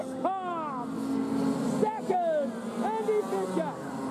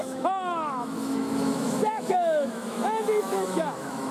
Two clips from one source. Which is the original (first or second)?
first